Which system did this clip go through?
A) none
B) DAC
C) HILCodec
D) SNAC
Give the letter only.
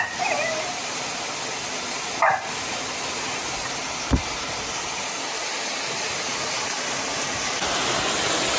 A